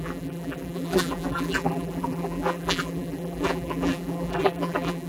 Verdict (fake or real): fake